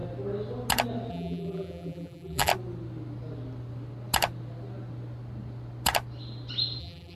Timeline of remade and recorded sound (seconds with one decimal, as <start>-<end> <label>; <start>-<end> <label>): 0.0-1.1 recorded; 1.1-2.5 remade; 2.5-6.8 recorded; 6.8-7.2 remade